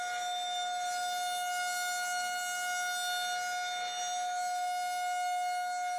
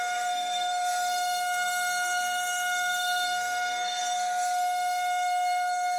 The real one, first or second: first